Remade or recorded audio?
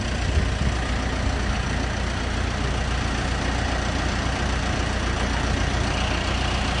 recorded